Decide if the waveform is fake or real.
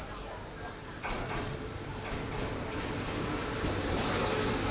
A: real